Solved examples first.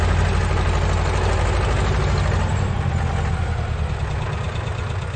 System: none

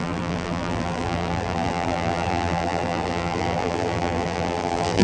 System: vocoder, BigVGAN v2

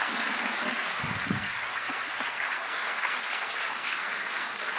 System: codec, SNAC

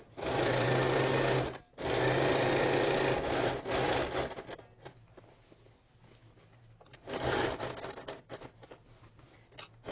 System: none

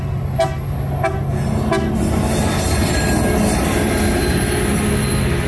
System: none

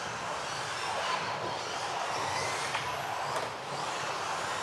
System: none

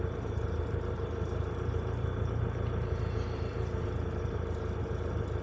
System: vocoder, BigVGAN v2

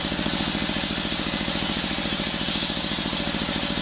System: none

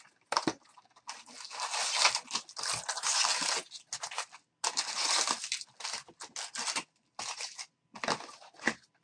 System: none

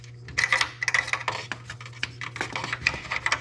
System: none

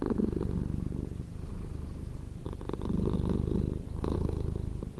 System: none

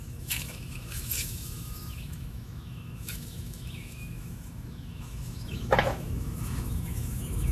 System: autoencoder, DAC-VAE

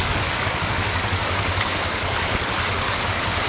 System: codec, DAC